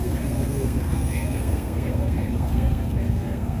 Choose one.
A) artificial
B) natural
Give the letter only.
A